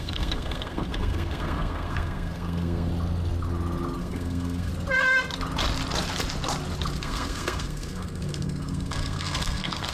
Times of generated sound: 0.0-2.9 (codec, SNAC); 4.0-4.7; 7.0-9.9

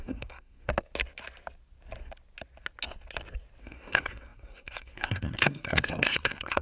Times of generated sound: 0.0-0.7 (codec, SNAC); 3.6-6.6

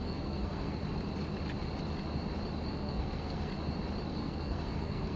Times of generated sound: 0.0-0.8 (codec, SNAC); 2.7-3.5; 4.1-5.2

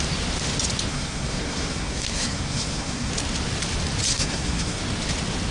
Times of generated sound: 0.9-3.1 (codec, SNAC); 4.1-4.8

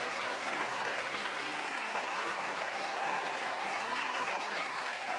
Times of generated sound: 0.0-5.2 (codec, SNAC)

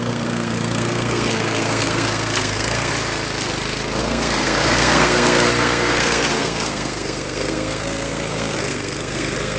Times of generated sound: 0.0-2.9 (codec, SNAC); 4.0-9.6

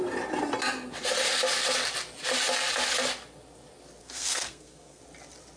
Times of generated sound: 4.0-5.0 (codec, SNAC)

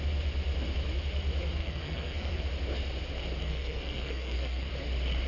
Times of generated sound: 1.6-2.4 (codec, SNAC); 3.4-4.7